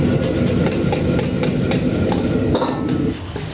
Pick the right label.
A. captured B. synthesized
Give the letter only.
A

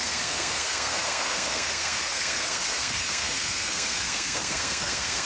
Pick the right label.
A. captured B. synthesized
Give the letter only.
B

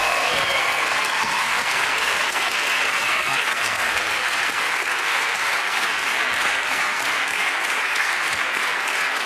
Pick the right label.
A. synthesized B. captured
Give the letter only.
A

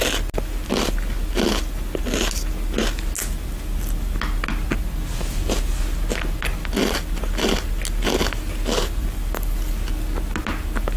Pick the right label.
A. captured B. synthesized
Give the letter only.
A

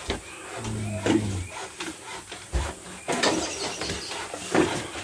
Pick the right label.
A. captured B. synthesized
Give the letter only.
A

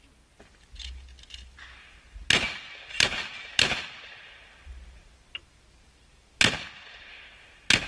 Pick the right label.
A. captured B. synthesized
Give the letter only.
A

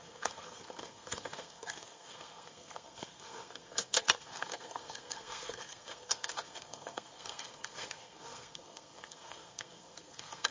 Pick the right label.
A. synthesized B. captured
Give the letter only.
A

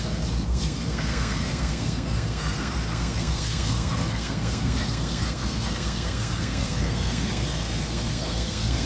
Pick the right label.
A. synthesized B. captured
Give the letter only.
A